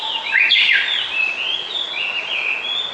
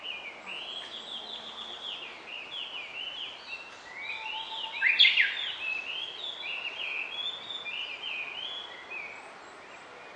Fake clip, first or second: first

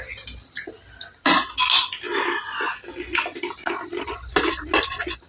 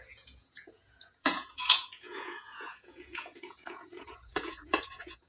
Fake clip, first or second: second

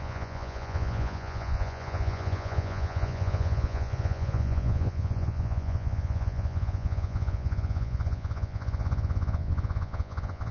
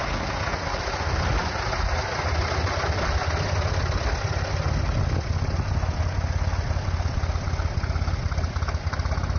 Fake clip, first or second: first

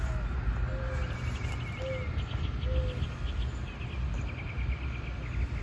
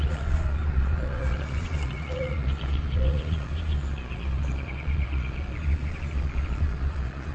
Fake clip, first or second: second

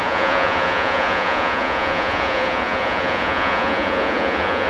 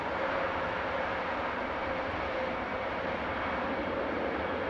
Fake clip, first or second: first